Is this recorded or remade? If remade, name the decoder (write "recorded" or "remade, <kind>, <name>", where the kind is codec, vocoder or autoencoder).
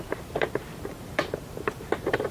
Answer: remade, vocoder, BigVGAN v2